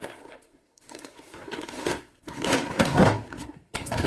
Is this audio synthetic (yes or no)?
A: yes